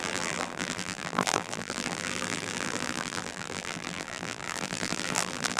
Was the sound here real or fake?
fake